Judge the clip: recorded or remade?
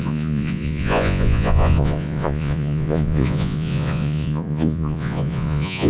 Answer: remade